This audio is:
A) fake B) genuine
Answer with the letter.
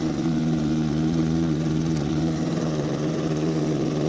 A